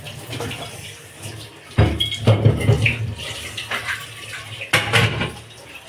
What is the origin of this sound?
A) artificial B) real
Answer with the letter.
B